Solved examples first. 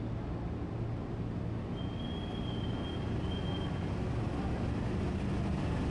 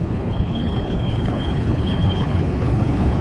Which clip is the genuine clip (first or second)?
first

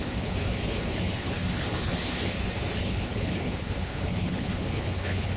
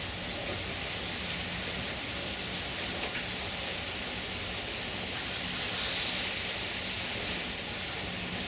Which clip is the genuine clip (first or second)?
second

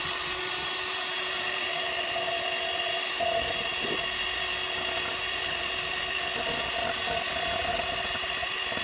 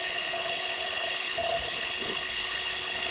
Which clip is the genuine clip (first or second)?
first